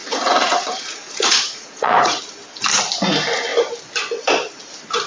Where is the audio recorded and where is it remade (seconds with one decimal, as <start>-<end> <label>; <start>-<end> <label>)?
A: 0.0-2.2 remade; 2.2-5.1 recorded